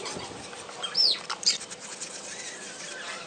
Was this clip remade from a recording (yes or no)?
no